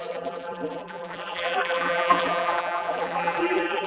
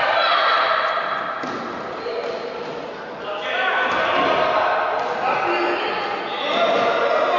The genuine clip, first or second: second